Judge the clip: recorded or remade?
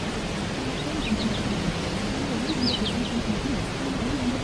recorded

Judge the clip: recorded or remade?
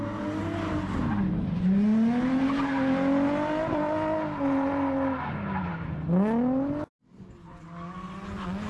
recorded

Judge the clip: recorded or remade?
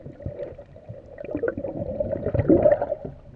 remade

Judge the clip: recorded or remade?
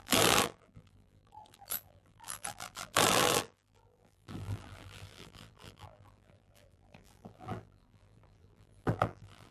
remade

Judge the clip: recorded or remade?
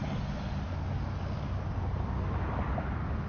recorded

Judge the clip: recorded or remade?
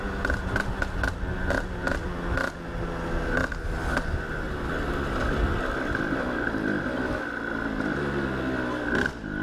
recorded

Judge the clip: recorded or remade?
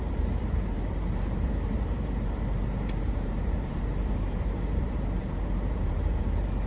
remade